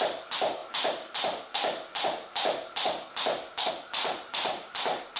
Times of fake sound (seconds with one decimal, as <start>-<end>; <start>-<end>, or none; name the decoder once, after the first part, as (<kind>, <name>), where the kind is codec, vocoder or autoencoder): none